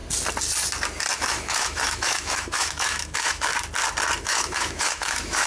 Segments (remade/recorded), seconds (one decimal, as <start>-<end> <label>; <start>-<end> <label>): 0.0-1.2 recorded; 1.2-3.5 remade; 3.5-4.2 recorded; 4.2-5.5 remade